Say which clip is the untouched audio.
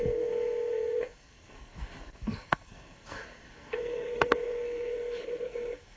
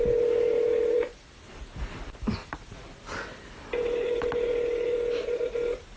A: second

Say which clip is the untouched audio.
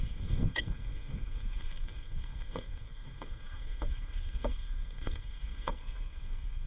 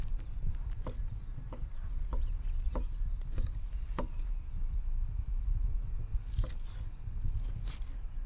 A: second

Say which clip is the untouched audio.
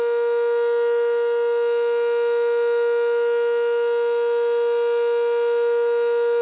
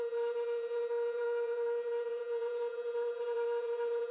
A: first